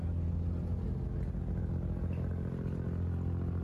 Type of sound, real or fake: real